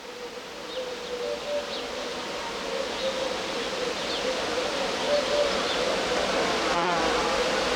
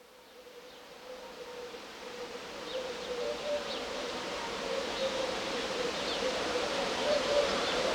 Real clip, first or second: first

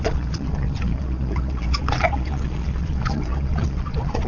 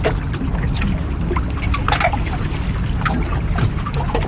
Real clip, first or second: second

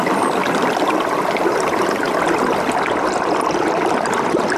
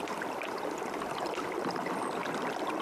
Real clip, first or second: first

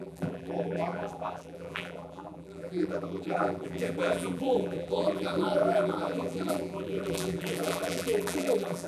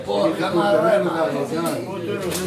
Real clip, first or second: second